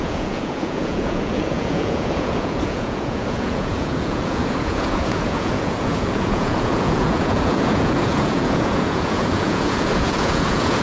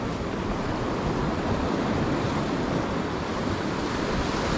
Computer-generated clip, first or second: first